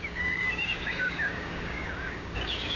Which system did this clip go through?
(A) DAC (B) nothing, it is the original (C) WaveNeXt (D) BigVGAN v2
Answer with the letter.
A